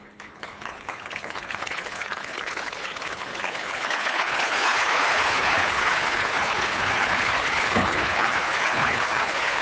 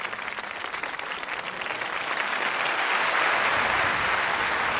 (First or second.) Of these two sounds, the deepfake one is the first